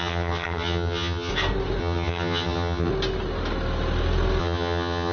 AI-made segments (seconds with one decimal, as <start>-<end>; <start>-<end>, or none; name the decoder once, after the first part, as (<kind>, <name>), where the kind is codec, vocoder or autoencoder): 0.0-1.3 (vocoder, HiFi-GAN); 1.8-2.9; 4.4-5.1